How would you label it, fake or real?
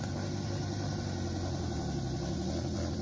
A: real